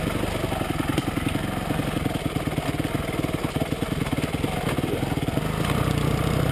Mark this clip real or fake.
real